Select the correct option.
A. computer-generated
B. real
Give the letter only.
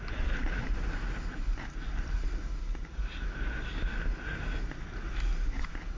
B